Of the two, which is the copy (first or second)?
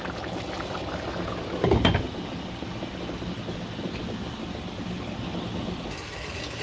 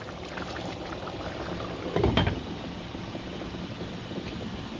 second